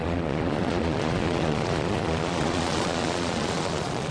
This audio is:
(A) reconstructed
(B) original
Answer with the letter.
A